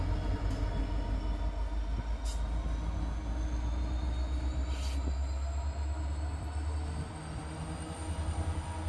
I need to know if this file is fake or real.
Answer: real